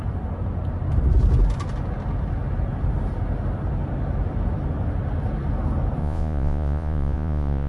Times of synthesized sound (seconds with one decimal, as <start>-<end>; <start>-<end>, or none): 6.0-7.7